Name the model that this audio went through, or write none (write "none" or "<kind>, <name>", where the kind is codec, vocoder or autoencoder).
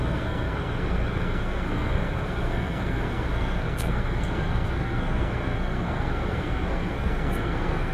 codec, SNAC